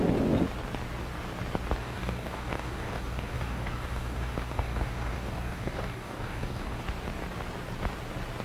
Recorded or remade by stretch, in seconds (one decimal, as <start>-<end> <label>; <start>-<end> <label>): 0.0-1.8 recorded; 1.8-6.8 remade; 6.8-8.4 recorded